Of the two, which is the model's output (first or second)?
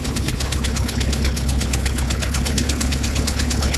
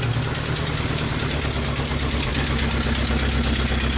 first